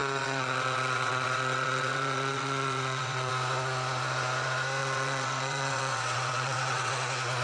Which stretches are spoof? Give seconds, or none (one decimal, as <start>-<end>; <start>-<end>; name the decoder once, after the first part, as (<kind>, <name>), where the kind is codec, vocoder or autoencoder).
0.0-3.3 (vocoder, WaveNeXt); 4.8-6.9